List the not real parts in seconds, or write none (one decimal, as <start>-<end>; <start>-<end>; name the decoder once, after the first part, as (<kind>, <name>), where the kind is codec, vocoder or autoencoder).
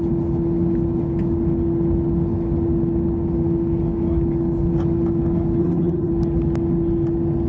5.6-6.1 (vocoder, HiFi-GAN)